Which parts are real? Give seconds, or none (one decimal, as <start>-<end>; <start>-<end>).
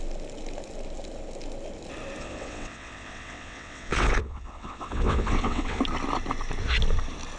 0.0-2.2; 5.8-7.4